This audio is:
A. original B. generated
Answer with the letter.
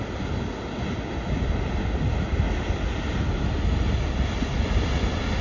A